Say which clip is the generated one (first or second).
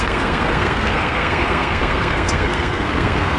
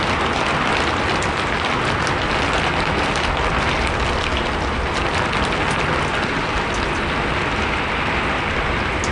first